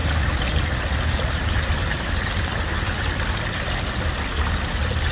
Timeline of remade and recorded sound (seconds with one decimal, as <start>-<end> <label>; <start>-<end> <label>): 0.0-5.1 recorded